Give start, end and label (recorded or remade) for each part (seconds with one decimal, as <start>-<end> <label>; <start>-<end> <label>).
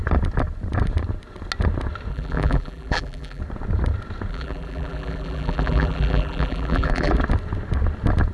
0.0-2.1 recorded; 2.1-3.4 remade; 3.4-4.3 recorded; 4.3-7.1 remade; 7.1-8.3 recorded